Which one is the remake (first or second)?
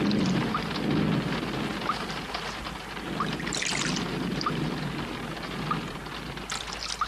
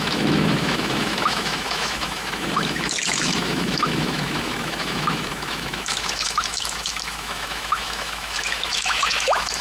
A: second